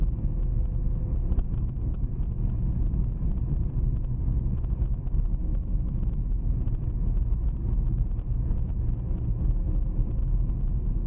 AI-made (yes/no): no